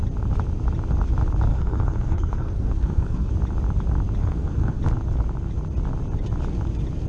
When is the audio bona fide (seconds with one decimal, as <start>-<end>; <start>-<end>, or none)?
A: 0.0-1.5; 3.3-4.2; 4.8-7.1

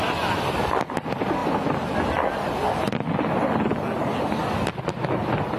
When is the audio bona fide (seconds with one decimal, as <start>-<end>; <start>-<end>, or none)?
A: 0.0-5.6

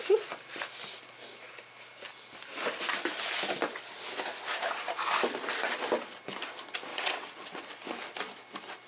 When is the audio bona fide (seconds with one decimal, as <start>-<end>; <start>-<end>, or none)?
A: 0.0-6.9; 7.6-8.9

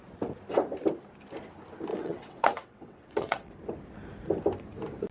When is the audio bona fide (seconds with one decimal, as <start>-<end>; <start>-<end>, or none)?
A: 0.0-1.9; 3.5-5.1

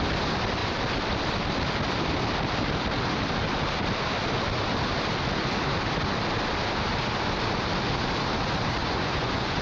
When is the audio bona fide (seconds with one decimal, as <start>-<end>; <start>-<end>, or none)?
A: 0.0-8.8

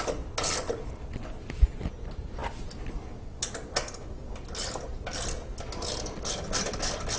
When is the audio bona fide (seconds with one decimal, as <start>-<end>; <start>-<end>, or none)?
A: 0.0-7.2

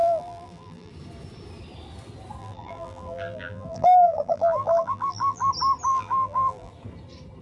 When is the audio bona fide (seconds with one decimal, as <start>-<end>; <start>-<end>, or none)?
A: 0.9-2.4; 5.5-5.9; 6.7-7.4

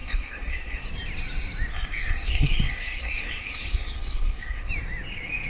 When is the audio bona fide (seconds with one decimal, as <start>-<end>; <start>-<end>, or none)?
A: 0.9-1.7; 4.7-5.5